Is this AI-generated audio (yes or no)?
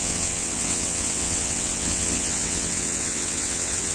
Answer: yes